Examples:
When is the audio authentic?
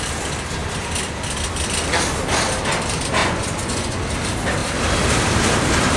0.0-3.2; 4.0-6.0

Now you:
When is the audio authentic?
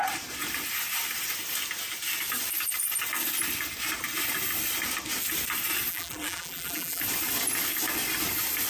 0.0-5.9; 7.0-8.7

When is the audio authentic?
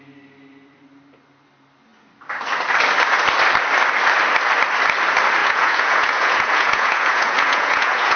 0.0-5.4